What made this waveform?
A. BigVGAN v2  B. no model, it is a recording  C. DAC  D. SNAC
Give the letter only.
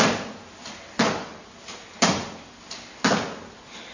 B